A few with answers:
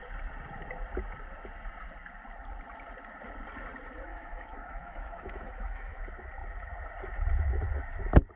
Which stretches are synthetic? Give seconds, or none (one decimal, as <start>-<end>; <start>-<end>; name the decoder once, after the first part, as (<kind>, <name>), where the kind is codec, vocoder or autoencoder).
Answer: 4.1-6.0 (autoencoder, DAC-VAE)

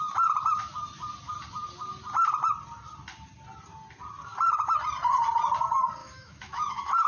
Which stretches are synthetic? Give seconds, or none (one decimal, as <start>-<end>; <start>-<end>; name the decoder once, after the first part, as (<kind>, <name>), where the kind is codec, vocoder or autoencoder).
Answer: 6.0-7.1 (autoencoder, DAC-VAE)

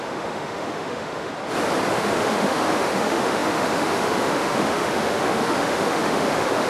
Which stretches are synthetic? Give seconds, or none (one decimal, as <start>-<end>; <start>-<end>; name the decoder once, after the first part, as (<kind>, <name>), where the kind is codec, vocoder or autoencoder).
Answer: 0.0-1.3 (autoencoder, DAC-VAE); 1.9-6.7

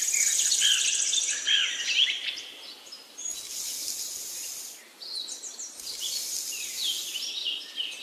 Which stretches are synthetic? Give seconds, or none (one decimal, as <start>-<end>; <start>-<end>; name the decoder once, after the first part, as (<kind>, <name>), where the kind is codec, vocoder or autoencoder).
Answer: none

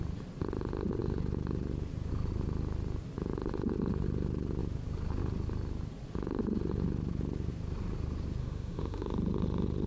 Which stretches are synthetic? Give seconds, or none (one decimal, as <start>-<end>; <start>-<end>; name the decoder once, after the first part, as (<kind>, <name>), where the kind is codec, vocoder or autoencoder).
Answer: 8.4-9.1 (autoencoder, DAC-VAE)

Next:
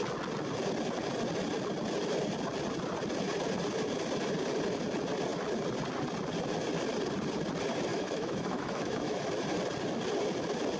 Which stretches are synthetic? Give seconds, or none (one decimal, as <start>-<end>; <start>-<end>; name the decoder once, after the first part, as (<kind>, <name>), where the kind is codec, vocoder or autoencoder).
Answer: 7.9-9.2 (autoencoder, DAC-VAE)

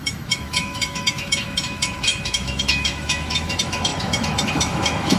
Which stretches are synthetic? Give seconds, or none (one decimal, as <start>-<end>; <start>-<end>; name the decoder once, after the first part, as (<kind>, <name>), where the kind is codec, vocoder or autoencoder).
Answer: 0.0-5.2 (autoencoder, DAC-VAE)

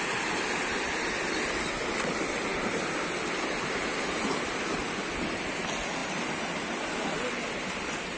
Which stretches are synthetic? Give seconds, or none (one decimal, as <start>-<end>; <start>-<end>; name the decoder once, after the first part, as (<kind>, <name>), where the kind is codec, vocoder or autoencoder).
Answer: none